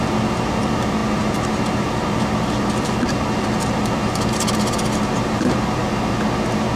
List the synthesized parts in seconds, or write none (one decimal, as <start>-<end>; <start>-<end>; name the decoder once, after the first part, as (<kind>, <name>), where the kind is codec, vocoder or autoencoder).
0.0-5.8 (vocoder, BigVGAN v2)